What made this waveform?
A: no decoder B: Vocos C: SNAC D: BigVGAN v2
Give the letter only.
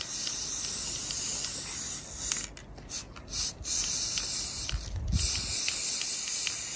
A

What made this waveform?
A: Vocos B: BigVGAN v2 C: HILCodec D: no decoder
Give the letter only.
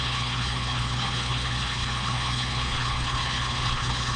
C